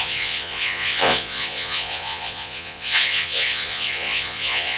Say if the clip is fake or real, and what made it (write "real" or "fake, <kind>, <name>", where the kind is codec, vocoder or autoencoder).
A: fake, vocoder, Vocos